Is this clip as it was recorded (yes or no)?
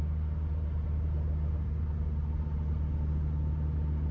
yes